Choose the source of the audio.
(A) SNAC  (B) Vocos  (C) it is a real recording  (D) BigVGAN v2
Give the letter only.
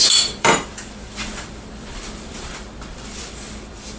D